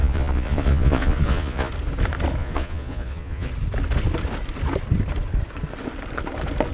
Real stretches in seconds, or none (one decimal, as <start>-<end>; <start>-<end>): 1.7-2.4; 3.5-6.7